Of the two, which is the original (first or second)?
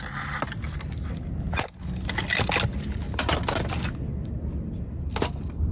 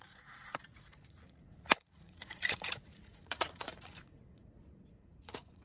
first